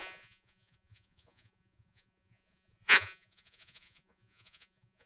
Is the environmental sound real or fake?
fake